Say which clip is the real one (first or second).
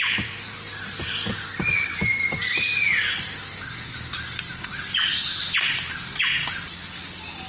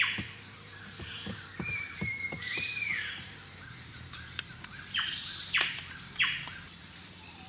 first